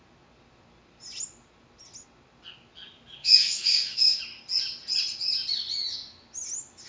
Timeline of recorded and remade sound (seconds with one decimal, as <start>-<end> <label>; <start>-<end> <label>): 0.0-3.2 recorded; 3.2-4.2 remade; 4.2-6.9 recorded